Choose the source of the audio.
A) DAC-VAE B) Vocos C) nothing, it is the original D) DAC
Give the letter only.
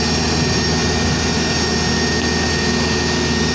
C